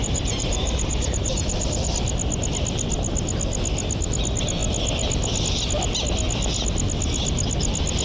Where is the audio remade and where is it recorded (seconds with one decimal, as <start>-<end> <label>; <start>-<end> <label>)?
0.0-1.9 remade; 1.9-8.0 recorded